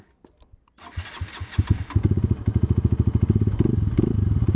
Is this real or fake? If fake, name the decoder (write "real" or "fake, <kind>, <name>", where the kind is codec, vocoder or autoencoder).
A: real